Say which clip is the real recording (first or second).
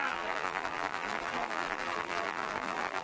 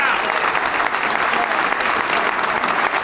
second